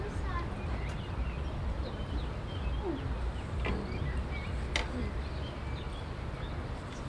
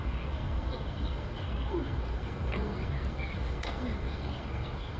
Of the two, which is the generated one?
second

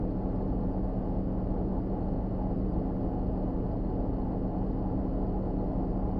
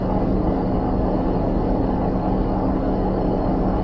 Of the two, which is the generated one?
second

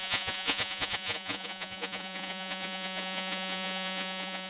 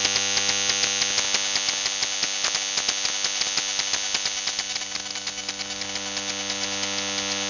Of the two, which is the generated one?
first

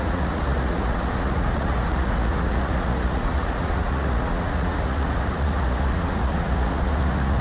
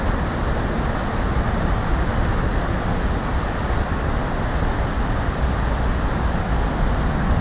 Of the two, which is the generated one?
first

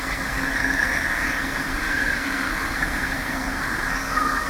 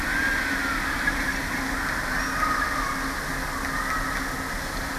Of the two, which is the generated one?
first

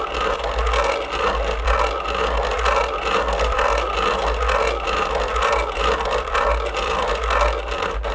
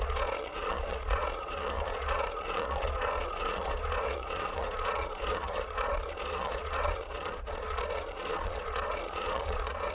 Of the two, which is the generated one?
second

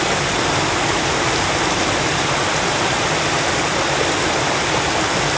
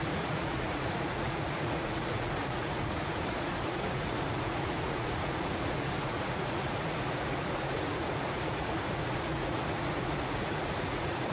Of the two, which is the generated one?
second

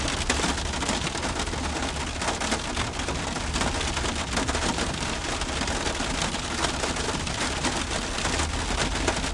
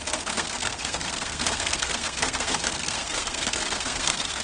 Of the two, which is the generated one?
second